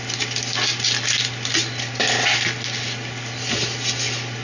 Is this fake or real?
real